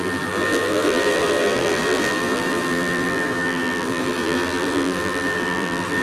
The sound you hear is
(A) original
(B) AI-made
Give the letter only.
B